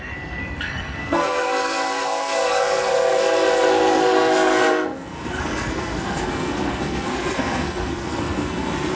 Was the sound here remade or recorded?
remade